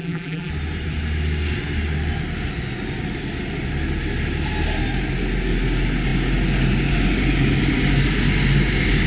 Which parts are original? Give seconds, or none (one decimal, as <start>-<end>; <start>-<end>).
0.5-9.1

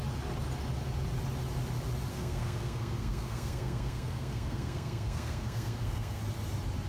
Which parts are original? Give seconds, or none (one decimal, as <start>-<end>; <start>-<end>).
0.0-2.1; 6.2-6.9